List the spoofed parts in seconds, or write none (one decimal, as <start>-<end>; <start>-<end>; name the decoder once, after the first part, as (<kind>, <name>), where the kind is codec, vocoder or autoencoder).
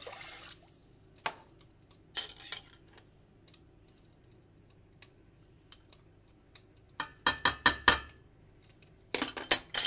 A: none